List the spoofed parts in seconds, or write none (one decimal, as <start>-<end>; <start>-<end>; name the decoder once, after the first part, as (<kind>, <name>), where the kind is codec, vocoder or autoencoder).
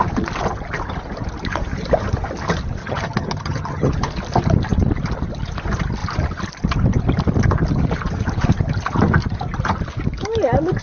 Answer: 2.8-3.9 (vocoder, HiFi-GAN)